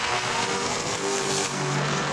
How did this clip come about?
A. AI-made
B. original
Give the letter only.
A